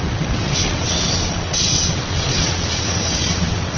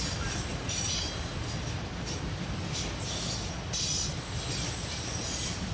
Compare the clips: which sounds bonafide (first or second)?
second